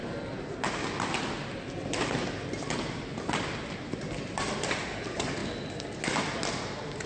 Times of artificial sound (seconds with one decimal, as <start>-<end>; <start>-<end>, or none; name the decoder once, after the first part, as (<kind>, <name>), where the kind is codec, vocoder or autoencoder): none